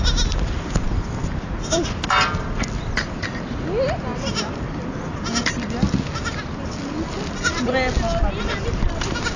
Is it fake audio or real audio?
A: real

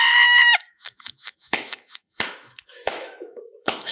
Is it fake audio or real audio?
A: fake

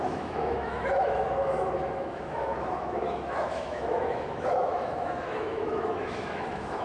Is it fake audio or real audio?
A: fake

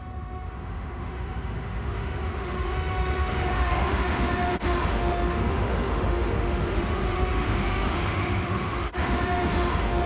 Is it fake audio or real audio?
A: fake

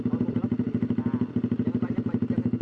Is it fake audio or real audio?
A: real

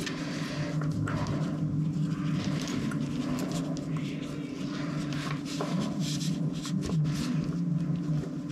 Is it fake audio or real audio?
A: real